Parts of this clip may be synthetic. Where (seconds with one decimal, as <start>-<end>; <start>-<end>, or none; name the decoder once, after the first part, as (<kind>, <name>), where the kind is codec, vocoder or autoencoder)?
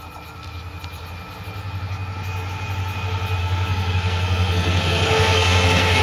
3.4-6.0 (codec, SNAC)